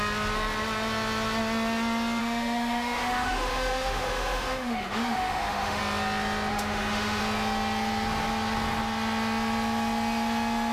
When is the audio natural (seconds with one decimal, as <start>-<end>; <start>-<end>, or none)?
0.0-2.2; 5.8-6.5; 7.2-10.7